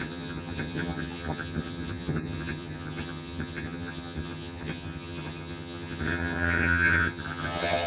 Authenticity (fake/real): fake